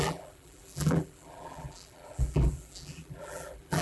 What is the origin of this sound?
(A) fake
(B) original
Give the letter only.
A